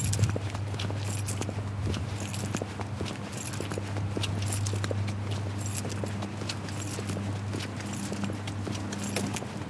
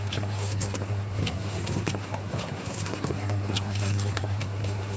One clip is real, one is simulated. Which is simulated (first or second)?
second